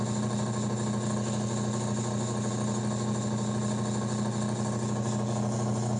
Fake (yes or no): no